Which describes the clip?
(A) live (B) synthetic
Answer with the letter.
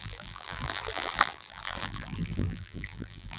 B